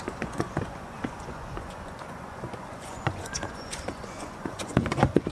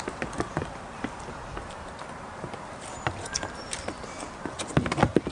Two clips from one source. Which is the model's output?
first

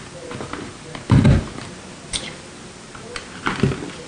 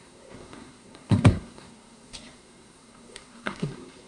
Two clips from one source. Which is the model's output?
second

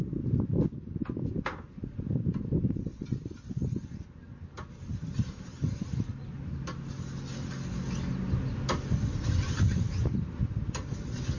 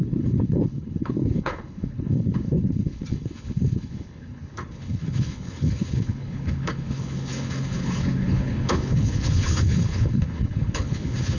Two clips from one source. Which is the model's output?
second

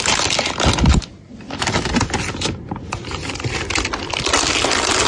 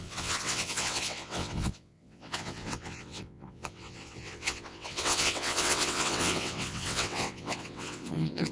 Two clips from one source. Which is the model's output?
second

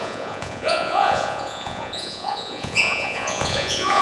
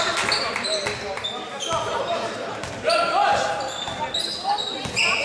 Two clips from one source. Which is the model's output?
first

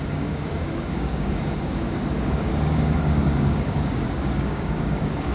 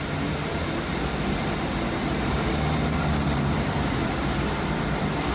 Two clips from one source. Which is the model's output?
first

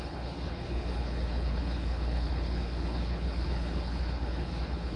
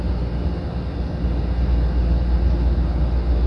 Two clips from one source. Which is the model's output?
first